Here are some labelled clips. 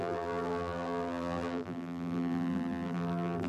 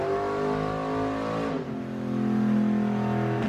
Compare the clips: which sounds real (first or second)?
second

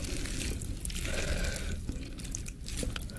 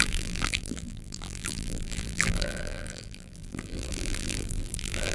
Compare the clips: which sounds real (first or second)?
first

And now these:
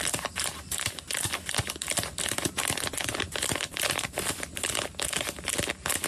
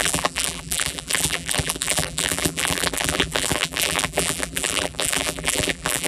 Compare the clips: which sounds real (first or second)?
first